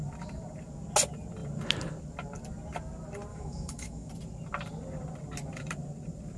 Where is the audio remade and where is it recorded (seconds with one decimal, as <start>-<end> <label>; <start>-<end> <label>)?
0.0-3.3 recorded; 3.3-4.1 remade; 4.1-6.4 recorded